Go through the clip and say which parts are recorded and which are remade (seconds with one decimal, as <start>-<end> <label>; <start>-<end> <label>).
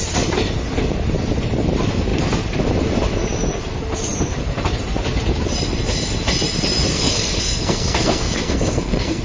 0.0-6.9 recorded; 6.9-9.2 remade